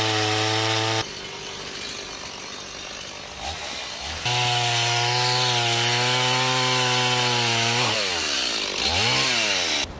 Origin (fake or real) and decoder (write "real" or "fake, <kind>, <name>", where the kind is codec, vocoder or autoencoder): real